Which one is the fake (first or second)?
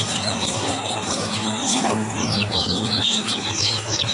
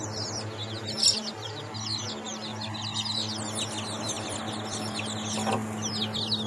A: first